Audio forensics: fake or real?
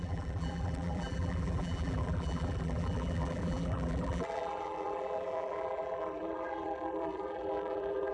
fake